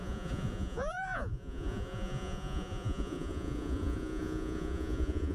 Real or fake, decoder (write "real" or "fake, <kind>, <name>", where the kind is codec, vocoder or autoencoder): fake, vocoder, Vocos